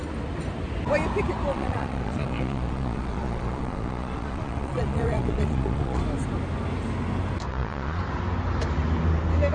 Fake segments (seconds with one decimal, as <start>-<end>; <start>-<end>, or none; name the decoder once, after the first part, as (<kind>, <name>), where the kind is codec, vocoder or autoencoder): 1.5-6.0 (vocoder, Vocos); 7.5-8.0